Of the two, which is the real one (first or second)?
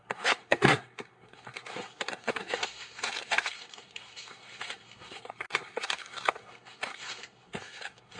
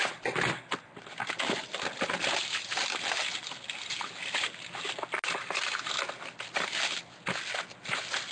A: second